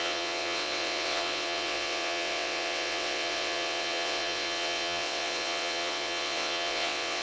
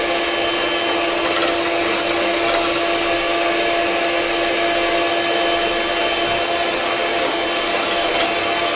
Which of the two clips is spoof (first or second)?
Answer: first